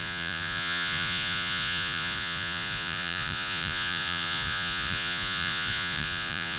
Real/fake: fake